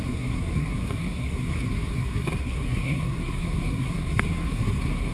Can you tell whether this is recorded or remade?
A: remade